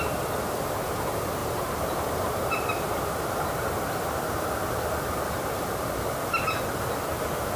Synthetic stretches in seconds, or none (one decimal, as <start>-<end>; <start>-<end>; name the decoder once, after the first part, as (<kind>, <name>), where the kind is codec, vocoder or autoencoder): 1.4-6.0 (vocoder, BigVGAN v2)